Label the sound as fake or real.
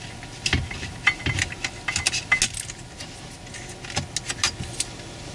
real